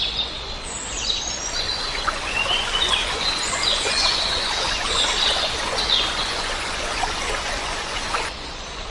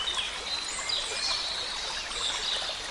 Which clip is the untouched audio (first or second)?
second